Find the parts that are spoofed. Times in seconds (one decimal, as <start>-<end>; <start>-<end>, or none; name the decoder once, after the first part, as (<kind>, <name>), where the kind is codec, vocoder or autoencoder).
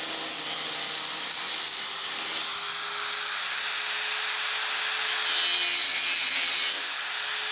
none